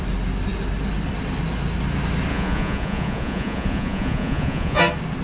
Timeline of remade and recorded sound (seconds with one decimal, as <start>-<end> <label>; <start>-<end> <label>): 0.0-2.3 recorded; 2.3-4.8 remade; 4.8-5.2 recorded